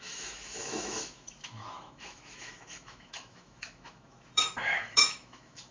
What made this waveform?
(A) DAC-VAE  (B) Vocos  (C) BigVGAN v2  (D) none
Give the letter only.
A